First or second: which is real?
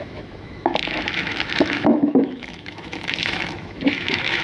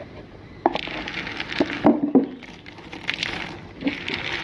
second